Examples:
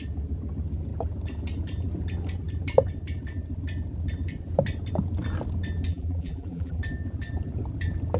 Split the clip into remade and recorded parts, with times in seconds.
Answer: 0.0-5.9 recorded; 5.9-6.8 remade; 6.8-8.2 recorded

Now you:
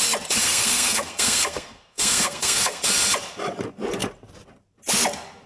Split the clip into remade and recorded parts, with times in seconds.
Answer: 0.0-0.4 recorded; 0.4-2.8 remade; 2.8-5.5 recorded

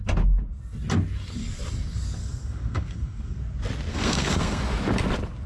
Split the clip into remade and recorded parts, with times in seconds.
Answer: 0.0-2.2 recorded; 2.2-3.4 remade; 3.4-3.9 recorded; 3.9-4.6 remade; 4.6-5.5 recorded

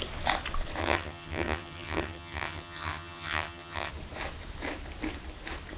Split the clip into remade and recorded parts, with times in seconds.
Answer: 0.0-0.8 recorded; 0.8-3.9 remade; 3.9-5.8 recorded

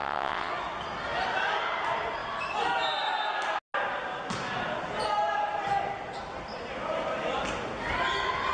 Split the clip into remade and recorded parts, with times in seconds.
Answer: 0.0-0.5 remade; 0.5-8.5 recorded